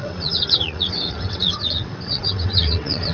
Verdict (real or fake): fake